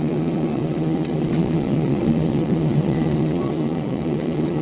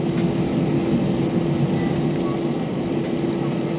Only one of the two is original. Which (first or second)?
second